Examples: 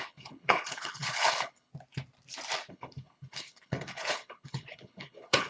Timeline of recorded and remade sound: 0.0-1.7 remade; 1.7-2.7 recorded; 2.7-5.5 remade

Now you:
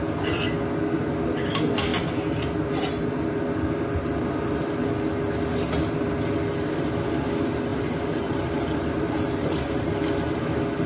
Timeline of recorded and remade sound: 0.0-7.7 recorded; 7.7-9.9 remade; 9.9-10.9 recorded

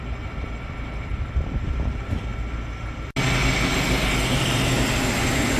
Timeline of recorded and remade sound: 0.0-2.3 remade; 2.3-3.8 recorded; 3.8-5.6 remade